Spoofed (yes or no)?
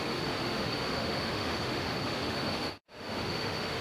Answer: yes